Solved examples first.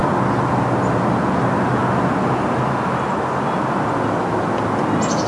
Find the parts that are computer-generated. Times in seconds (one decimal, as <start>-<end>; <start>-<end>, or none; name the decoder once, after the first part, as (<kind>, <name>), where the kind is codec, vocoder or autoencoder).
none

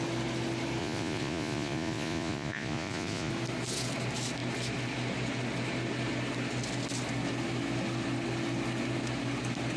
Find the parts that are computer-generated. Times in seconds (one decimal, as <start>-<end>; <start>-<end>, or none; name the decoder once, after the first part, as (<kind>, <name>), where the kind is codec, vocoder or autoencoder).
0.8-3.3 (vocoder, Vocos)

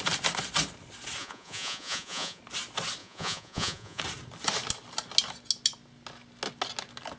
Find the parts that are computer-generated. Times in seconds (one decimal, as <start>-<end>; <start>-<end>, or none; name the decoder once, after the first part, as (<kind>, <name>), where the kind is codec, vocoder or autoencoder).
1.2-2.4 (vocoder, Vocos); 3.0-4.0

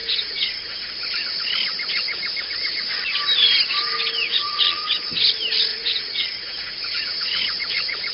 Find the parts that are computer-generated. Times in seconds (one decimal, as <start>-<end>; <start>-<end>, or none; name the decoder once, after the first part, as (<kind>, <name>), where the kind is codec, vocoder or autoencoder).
0.0-0.9 (vocoder, Vocos); 4.2-4.8; 5.7-8.1

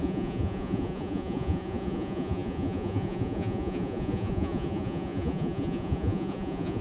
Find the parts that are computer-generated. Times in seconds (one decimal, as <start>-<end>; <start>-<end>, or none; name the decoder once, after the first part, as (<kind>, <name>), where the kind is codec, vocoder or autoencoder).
0.0-6.8 (vocoder, Vocos)

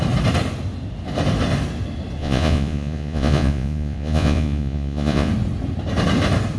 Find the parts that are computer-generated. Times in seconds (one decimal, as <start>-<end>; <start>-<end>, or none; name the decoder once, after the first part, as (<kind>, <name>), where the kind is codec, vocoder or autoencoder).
2.2-5.3 (vocoder, Vocos)

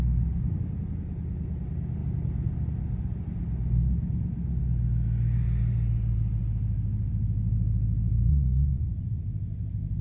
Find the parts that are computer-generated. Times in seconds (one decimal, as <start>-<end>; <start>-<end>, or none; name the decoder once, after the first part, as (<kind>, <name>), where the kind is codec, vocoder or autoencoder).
8.3-9.2 (vocoder, Vocos)

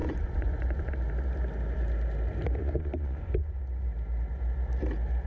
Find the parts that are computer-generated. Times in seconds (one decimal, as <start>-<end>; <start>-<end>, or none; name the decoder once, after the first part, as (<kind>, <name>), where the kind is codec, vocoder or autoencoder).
0.0-0.9 (vocoder, Vocos); 2.6-3.6